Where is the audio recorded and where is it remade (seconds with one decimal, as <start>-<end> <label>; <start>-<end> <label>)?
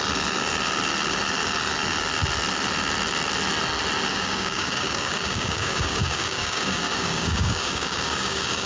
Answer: 0.0-4.1 recorded; 4.1-8.7 remade